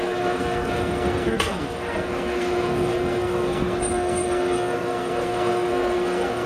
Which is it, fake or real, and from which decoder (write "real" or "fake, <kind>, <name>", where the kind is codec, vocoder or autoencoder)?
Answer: fake, codec, SNAC